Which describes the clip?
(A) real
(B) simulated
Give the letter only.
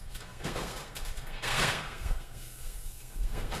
B